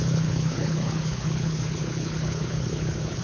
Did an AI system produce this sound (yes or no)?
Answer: yes